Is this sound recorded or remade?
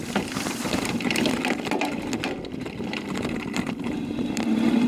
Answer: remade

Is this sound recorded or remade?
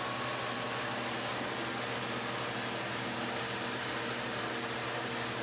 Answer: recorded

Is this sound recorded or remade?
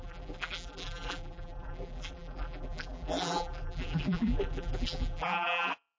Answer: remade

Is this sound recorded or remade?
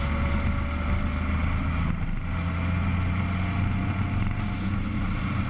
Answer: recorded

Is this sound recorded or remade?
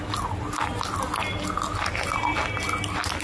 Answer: recorded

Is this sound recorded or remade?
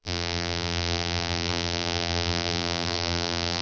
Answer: remade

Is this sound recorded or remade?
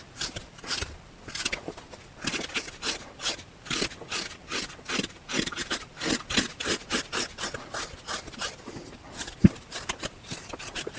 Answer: recorded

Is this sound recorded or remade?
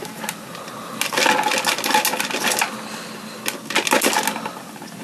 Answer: recorded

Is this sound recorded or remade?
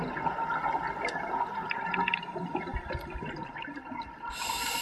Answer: recorded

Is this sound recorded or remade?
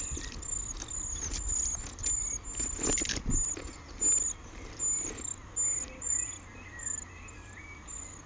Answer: recorded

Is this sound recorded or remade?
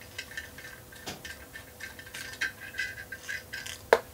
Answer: recorded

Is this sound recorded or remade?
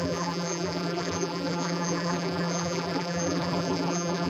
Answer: remade